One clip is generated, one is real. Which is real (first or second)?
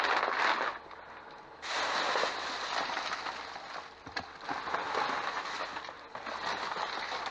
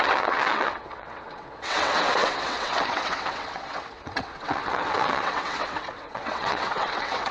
first